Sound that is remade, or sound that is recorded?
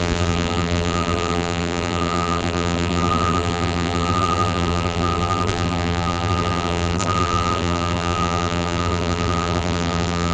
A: remade